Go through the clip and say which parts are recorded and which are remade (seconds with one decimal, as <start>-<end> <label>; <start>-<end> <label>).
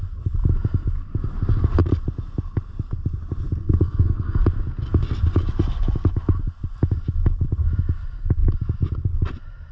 0.0-3.6 recorded; 3.6-4.4 remade; 4.4-9.7 recorded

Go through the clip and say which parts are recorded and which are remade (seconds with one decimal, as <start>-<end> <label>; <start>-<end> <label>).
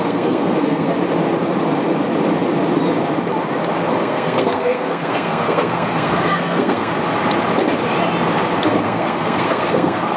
0.0-0.9 remade; 0.9-4.0 recorded; 4.0-6.9 remade; 6.9-8.6 recorded; 8.6-10.2 remade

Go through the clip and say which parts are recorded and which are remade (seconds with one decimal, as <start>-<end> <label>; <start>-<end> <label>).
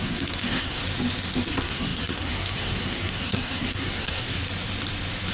0.0-0.8 remade; 0.8-1.5 recorded; 1.5-4.4 remade; 4.4-5.3 recorded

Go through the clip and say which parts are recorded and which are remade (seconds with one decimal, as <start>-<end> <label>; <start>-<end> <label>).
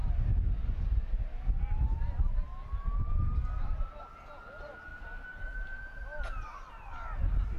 0.0-7.6 recorded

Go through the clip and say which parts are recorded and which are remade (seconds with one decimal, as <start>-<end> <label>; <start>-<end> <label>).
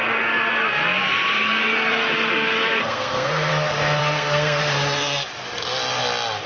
0.0-2.8 recorded; 2.8-3.5 remade; 3.5-4.0 recorded; 4.0-4.6 remade; 4.6-6.5 recorded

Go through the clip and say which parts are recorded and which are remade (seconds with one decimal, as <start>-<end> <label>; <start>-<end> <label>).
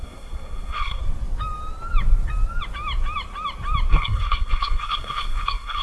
0.0-1.0 remade; 1.0-3.9 recorded; 3.9-5.8 remade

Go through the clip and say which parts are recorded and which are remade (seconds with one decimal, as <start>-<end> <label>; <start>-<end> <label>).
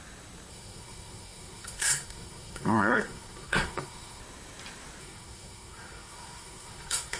0.0-0.5 recorded; 0.5-4.2 remade; 4.2-5.0 recorded; 5.0-7.2 remade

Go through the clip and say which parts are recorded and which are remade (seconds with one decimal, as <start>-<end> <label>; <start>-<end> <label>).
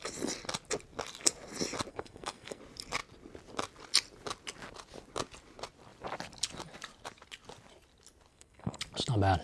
0.0-1.9 recorded; 1.9-2.6 remade; 2.6-8.3 recorded; 8.3-8.8 remade; 8.8-9.4 recorded